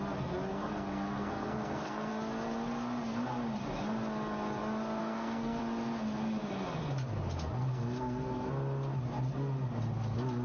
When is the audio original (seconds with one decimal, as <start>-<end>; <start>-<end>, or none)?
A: 0.0-0.5; 2.1-5.0; 5.6-7.6; 8.5-10.4